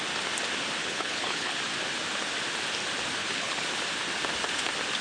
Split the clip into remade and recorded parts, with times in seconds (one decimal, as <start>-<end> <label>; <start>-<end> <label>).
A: 0.0-0.8 recorded; 0.8-1.6 remade; 1.6-3.2 recorded; 3.2-3.7 remade; 3.7-5.0 recorded